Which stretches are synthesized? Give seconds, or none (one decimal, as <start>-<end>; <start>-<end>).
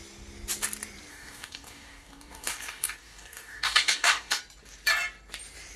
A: 1.1-4.4